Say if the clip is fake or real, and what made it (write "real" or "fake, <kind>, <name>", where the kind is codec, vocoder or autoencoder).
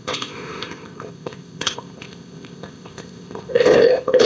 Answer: fake, codec, ZipCodec